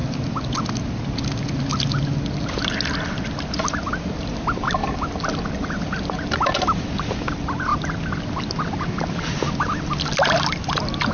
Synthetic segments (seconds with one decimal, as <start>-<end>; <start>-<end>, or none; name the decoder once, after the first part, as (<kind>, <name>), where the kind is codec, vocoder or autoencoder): none